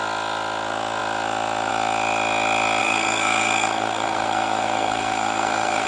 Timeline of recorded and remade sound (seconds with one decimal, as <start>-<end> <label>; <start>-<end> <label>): 0.0-2.8 recorded; 2.8-5.9 remade